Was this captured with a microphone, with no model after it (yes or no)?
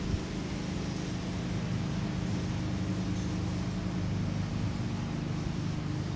yes